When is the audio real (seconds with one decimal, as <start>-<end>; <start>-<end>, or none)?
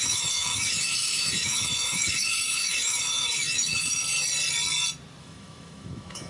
4.0-5.2